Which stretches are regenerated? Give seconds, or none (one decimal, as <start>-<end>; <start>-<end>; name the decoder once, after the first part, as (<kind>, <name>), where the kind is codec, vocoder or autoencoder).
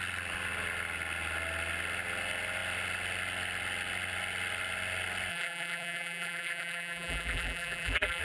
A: 5.3-8.2 (vocoder, BigVGAN v2)